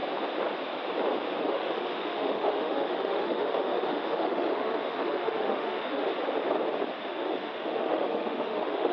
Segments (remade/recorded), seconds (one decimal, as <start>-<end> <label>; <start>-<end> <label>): 0.0-1.4 recorded; 1.4-6.1 remade; 6.1-7.0 recorded; 7.0-8.9 remade